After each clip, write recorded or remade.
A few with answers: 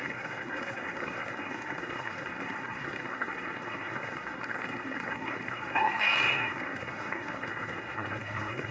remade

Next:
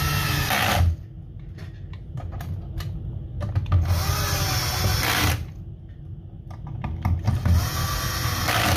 recorded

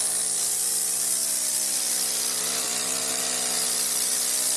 remade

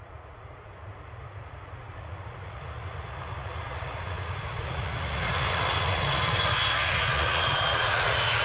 remade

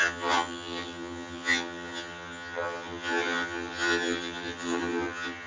remade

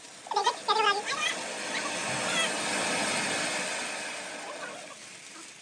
recorded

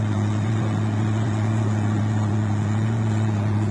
remade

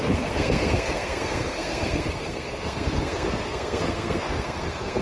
remade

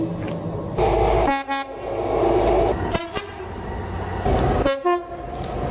recorded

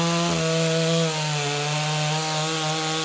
recorded